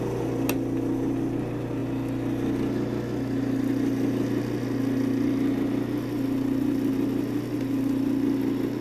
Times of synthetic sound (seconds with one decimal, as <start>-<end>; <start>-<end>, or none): none